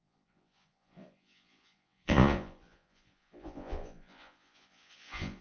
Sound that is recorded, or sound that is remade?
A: remade